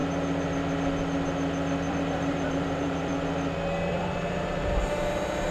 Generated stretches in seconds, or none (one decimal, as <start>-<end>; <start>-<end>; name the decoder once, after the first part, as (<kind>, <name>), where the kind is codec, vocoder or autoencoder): 1.9-3.1 (vocoder, BigVGAN v2); 3.9-5.5